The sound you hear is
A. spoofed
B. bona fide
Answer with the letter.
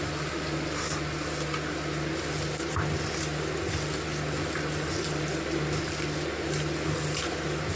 B